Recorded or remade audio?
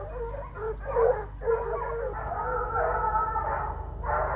recorded